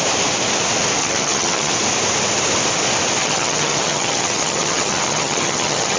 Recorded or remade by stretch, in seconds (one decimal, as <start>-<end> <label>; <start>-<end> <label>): 0.0-1.0 recorded; 1.0-1.7 remade; 1.7-3.2 recorded; 3.2-6.0 remade